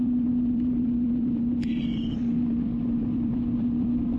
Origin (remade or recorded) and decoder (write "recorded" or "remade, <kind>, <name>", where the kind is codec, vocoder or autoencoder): remade, vocoder, BigVGAN v2